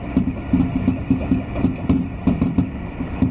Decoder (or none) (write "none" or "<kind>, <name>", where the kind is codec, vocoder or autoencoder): none